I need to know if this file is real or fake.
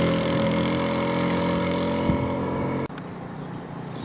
real